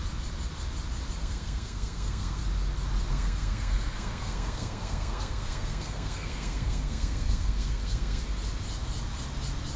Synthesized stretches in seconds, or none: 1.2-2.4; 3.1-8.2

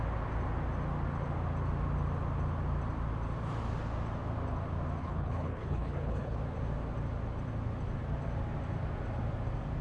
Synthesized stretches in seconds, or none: 5.0-6.4

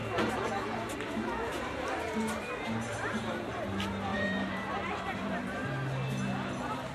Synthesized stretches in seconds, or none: 0.0-0.5; 1.5-2.9; 4.1-5.7

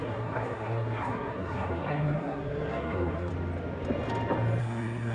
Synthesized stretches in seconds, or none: 0.0-3.3; 4.6-5.1